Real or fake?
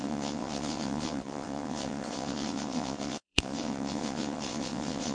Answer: fake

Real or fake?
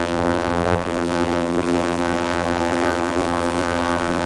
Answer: fake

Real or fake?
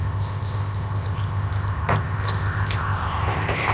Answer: fake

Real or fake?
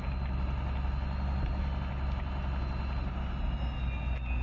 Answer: real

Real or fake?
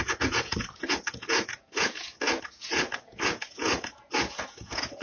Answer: fake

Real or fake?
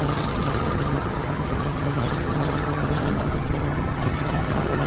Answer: fake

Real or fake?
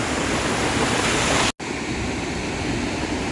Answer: real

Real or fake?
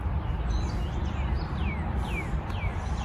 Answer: real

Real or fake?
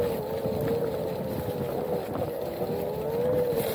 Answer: real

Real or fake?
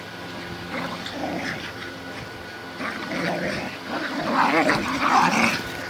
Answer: real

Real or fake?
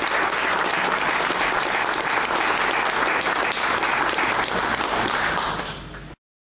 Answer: real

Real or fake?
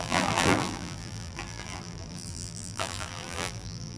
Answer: fake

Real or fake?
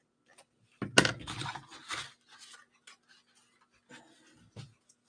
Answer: real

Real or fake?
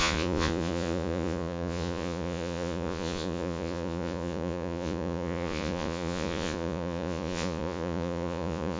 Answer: fake